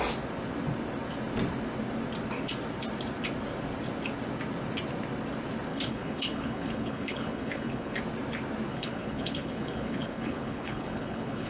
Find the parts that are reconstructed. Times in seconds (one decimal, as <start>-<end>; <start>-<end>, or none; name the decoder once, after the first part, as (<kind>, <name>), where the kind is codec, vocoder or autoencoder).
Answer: 5.7-8.0 (codec, HILCodec); 8.7-11.5